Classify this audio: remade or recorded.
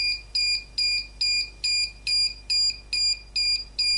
recorded